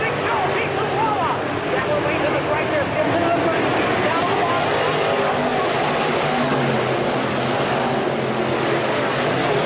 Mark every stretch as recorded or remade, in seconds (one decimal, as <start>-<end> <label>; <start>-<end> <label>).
0.0-9.7 recorded